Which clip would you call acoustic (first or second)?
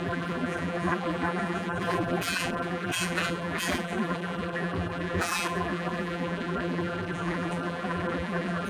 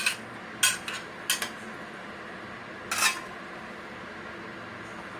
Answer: second